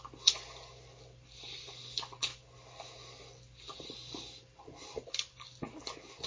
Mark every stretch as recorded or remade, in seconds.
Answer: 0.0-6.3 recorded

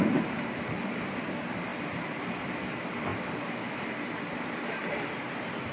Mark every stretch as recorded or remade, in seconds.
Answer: 0.0-5.7 remade

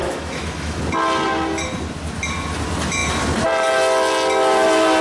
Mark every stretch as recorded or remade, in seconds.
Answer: 0.0-0.8 remade; 0.8-5.0 recorded

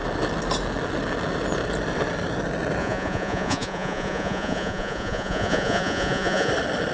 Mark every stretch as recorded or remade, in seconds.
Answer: 0.0-2.8 recorded; 2.8-6.5 remade; 6.5-6.9 recorded

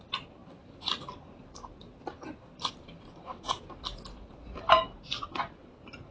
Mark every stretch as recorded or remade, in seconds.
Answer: 0.0-6.1 recorded